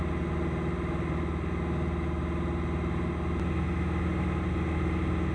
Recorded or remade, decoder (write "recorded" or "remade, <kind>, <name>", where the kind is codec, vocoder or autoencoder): recorded